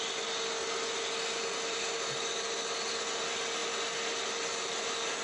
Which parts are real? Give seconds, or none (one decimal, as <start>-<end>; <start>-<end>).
0.0-5.2